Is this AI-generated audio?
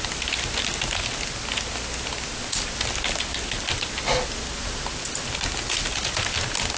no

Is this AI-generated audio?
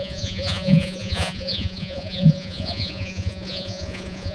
yes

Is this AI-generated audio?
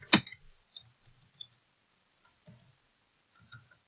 no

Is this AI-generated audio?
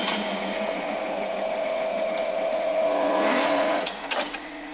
yes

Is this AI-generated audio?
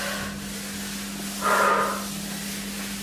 no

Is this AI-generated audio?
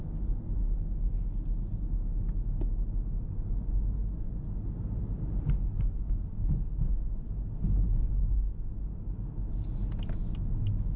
no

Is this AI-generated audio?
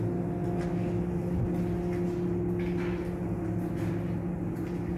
no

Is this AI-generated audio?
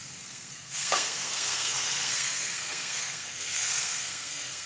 yes